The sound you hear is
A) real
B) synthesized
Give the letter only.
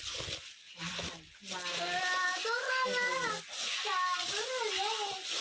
A